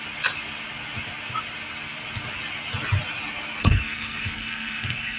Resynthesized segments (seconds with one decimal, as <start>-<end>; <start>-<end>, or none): 3.6-5.2